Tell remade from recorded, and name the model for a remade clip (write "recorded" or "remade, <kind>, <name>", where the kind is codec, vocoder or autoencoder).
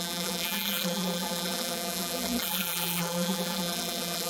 remade, vocoder, BigVGAN v2